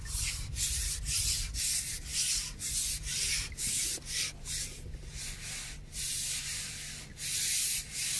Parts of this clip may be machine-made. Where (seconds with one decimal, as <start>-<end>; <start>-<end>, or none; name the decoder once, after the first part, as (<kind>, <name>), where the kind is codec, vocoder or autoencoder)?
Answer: none